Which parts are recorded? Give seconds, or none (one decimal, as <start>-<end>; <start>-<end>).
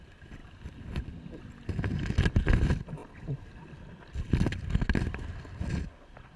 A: 0.0-6.4